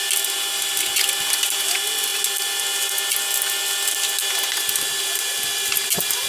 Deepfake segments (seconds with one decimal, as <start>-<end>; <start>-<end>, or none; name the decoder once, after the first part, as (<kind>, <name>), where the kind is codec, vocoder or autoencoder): none